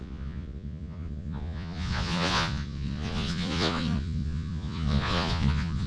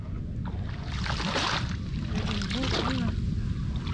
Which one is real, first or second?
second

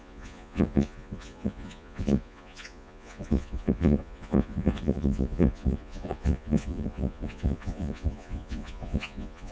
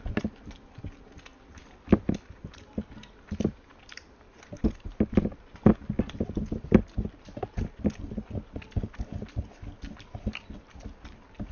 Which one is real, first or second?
second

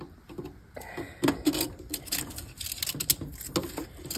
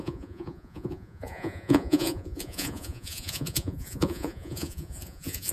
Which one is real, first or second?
first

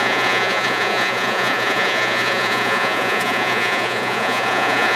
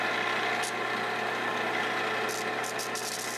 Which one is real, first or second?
second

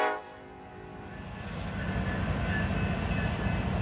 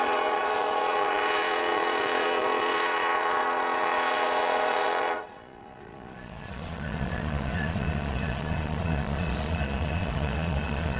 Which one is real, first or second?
first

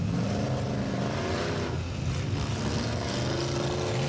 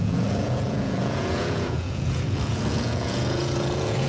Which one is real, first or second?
first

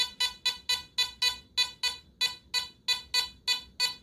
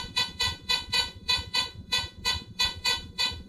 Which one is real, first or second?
first